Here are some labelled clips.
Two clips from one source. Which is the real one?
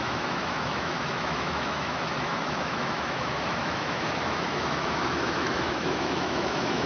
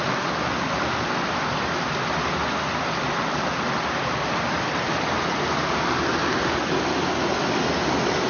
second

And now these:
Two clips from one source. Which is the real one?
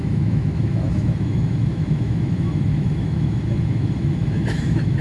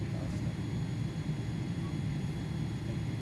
second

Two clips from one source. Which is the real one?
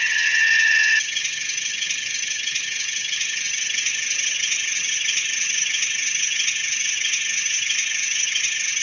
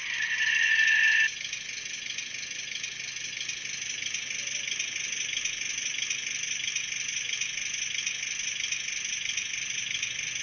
second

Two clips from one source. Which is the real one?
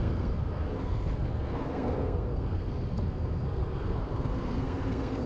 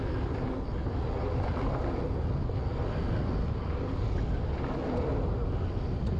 second